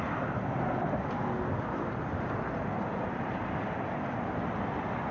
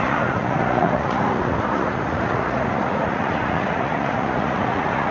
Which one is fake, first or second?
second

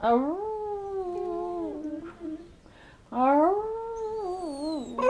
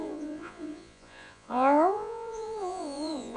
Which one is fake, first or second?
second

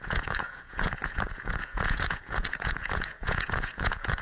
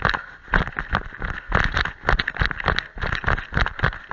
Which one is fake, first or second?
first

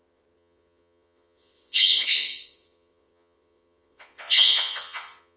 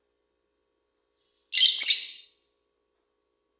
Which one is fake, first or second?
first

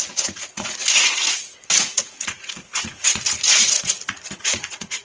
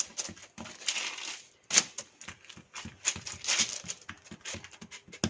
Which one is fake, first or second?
first